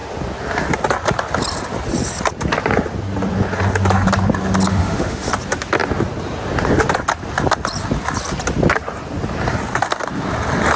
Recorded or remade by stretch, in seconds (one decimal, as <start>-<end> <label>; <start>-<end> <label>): 0.0-4.7 recorded; 4.7-5.3 remade; 5.3-10.8 recorded